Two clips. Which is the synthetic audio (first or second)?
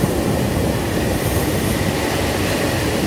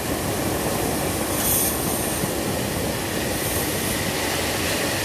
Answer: first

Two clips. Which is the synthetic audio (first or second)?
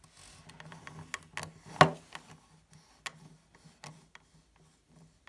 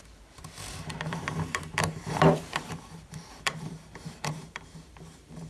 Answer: second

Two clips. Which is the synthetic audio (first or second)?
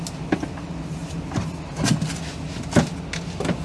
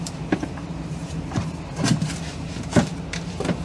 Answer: second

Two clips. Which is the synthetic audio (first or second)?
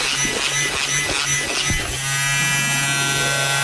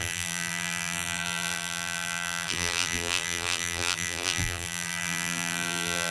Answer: second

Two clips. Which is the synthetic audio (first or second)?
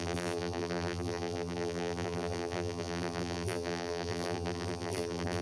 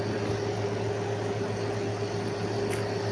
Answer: first